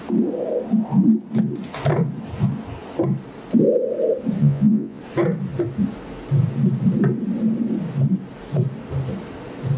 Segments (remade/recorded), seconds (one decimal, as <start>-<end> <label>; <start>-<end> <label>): 0.0-4.4 recorded; 4.4-5.0 remade; 5.0-9.8 recorded